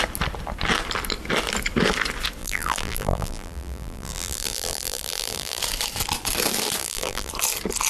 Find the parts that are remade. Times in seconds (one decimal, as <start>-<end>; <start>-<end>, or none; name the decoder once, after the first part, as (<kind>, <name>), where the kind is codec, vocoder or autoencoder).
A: 2.4-5.6 (vocoder, BigVGAN v2); 6.8-7.3